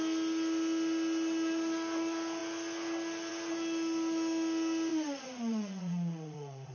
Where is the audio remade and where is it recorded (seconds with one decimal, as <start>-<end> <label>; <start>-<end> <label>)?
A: 0.0-4.9 recorded; 4.9-6.7 remade